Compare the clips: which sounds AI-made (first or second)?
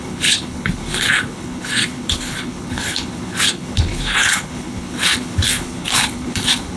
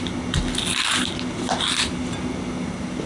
first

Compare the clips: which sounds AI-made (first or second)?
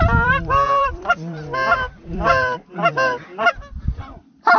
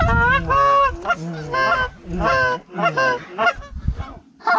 first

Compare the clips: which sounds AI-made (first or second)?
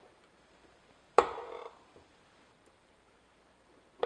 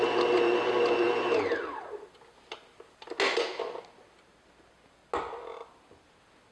first